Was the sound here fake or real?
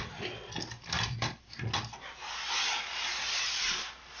real